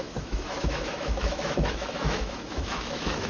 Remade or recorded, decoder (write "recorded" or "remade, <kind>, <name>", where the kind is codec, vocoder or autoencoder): remade, autoencoder, DAC-VAE